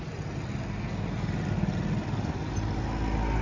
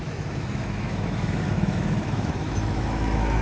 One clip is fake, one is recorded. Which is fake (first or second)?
second